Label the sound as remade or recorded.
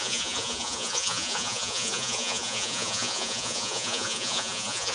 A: remade